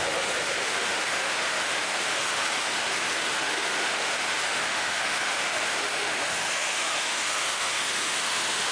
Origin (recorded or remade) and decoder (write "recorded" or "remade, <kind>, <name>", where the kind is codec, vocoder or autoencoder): remade, autoencoder, DAC-VAE